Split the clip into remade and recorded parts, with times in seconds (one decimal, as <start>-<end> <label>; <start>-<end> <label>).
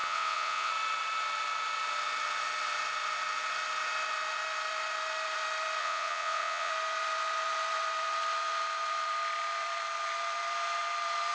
0.0-0.7 remade; 0.7-5.8 recorded; 5.8-6.7 remade; 6.7-11.3 recorded